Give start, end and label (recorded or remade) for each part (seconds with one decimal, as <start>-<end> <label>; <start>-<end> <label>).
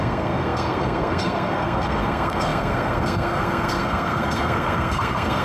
0.0-5.4 remade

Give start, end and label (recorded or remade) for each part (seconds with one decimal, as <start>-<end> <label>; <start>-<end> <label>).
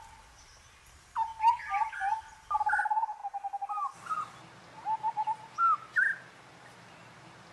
0.0-1.3 remade; 1.3-2.3 recorded; 2.3-7.5 remade